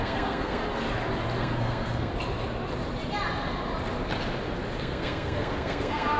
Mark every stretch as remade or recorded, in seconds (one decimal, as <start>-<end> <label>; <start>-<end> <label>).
0.0-0.6 remade; 0.6-1.4 recorded; 1.4-2.1 remade; 2.1-4.8 recorded; 4.8-6.2 remade